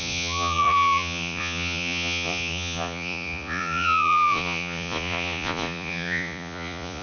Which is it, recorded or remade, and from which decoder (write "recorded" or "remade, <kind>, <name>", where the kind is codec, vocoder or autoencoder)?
remade, vocoder, Vocos